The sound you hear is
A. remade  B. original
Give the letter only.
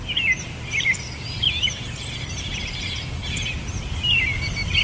B